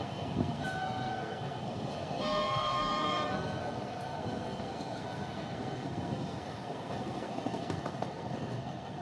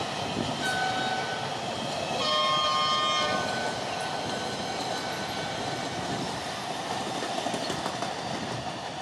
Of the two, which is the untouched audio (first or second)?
second